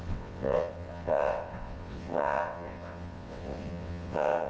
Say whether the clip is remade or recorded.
remade